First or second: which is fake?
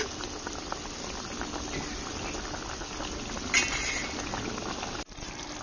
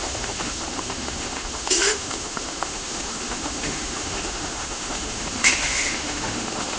second